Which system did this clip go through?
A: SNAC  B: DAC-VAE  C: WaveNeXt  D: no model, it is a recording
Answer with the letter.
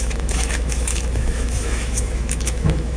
B